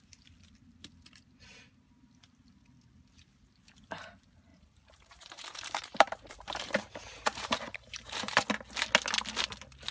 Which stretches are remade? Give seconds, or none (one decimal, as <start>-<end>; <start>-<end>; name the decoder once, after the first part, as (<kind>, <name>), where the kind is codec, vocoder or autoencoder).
4.5-8.5 (vocoder, BigVGAN v2)